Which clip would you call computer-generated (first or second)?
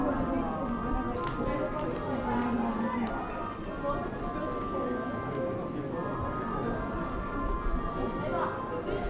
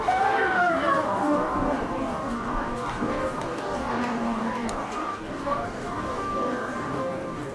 second